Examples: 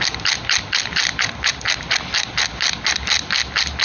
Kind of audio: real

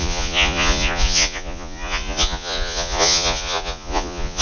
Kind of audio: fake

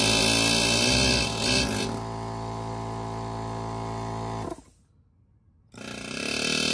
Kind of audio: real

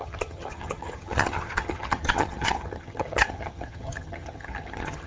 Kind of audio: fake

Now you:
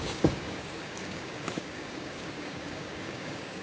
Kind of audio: fake